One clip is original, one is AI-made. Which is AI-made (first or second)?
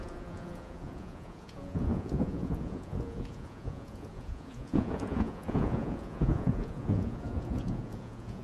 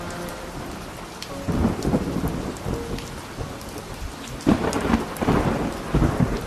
first